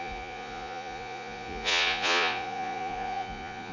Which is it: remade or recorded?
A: remade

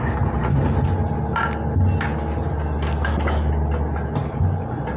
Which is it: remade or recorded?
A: recorded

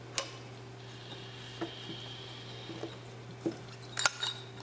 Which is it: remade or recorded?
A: recorded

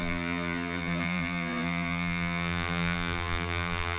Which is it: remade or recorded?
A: remade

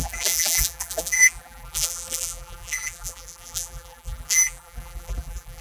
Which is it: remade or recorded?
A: remade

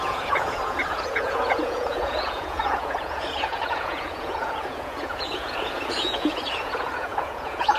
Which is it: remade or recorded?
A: remade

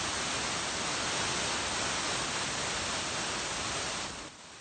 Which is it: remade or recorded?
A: recorded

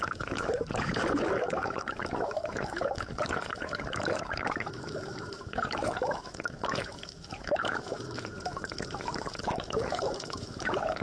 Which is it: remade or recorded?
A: remade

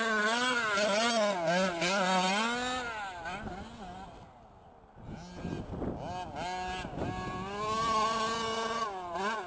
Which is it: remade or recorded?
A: recorded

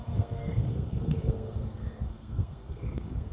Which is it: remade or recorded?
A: remade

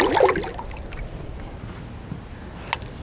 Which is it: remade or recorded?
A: recorded